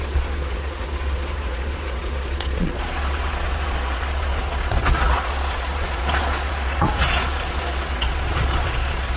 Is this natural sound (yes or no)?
no